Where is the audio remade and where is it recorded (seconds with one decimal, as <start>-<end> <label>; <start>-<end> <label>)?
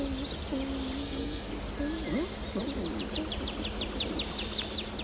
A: 0.0-1.0 recorded; 1.0-1.5 remade; 1.5-5.0 recorded